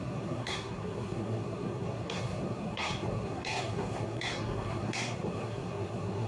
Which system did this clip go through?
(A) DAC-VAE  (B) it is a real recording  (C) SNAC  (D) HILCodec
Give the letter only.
C